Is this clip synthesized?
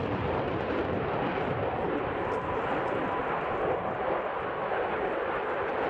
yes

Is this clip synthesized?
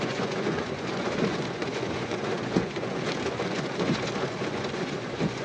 yes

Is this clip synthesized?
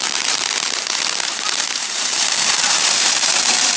yes